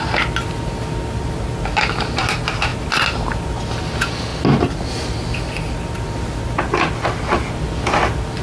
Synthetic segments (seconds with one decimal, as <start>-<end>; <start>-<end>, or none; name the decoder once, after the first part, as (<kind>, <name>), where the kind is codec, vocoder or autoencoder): none